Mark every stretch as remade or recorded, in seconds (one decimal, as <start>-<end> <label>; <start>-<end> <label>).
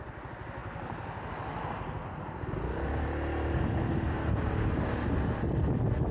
0.0-6.1 recorded